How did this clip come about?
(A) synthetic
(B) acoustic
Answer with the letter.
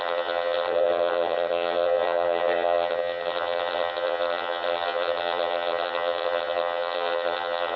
A